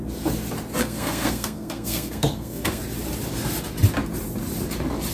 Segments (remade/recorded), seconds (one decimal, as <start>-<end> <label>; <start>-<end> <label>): 0.0-0.8 recorded; 0.8-2.8 remade; 2.8-5.1 recorded